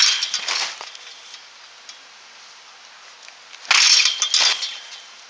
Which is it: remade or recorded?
recorded